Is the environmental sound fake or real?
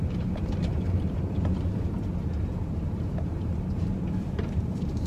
fake